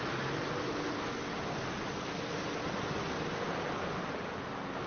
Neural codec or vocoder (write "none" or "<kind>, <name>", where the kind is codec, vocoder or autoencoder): none